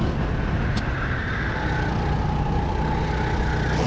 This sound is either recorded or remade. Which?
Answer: recorded